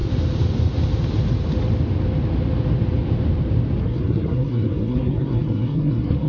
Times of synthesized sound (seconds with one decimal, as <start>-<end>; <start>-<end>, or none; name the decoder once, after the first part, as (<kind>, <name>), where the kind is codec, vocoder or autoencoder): 3.8-6.3 (codec, SNAC)